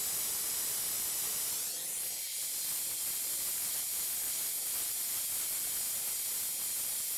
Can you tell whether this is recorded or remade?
recorded